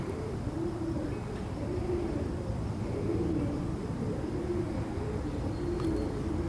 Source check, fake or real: fake